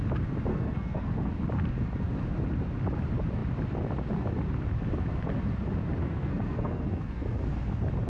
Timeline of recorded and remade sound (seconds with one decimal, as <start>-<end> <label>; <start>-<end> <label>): 0.0-0.5 recorded; 0.5-1.3 remade; 1.3-6.0 recorded; 6.0-7.4 remade; 7.4-8.1 recorded